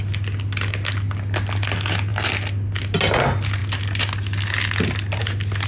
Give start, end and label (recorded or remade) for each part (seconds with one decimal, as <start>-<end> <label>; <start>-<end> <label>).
0.0-5.7 recorded